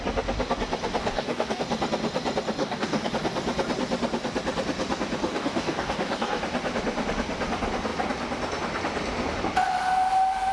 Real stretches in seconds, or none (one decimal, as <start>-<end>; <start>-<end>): 0.0-1.0; 1.6-2.6; 3.1-5.3; 6.4-10.5